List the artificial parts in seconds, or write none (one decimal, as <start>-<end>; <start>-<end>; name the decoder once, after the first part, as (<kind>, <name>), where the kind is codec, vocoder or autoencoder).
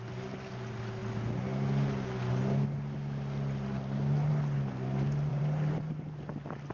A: 5.3-6.2 (vocoder, BigVGAN v2)